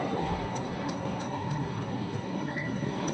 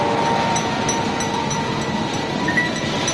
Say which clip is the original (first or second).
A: second